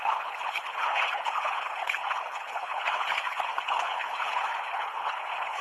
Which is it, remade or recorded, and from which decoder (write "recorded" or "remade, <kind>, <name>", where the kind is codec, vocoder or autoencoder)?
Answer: remade, codec, HILCodec